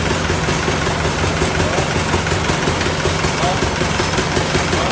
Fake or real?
real